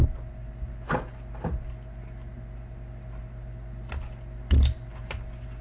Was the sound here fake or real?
real